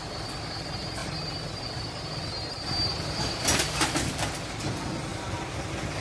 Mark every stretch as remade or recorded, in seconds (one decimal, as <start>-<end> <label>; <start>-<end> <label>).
0.0-1.0 recorded; 1.0-1.6 remade; 1.6-2.9 recorded; 2.9-4.6 remade; 4.6-5.1 recorded; 5.1-6.0 remade

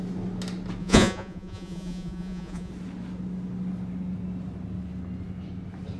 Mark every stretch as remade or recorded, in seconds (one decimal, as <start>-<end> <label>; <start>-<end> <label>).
0.0-0.8 recorded; 0.8-2.7 remade; 2.7-6.0 recorded